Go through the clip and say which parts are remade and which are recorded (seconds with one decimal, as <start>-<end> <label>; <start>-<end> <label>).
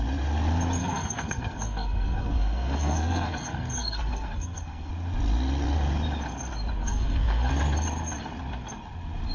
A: 0.0-0.8 recorded; 0.8-4.9 remade; 4.9-6.8 recorded; 6.8-7.5 remade; 7.5-9.3 recorded